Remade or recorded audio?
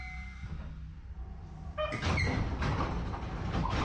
recorded